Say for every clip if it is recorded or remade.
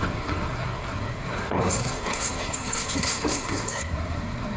remade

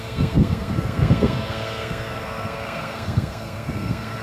remade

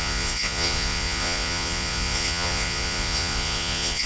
remade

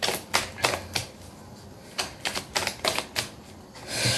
recorded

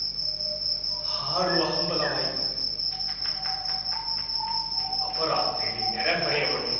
recorded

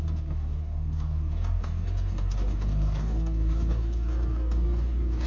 remade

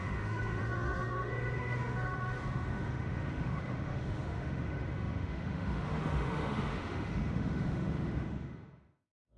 remade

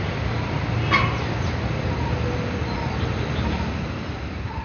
recorded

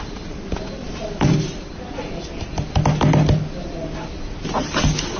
recorded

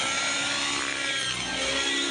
recorded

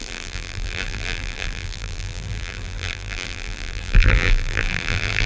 remade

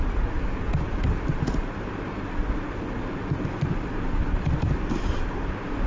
recorded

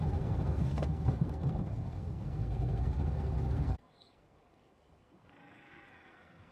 remade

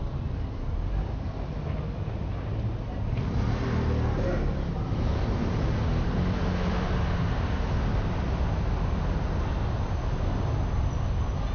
recorded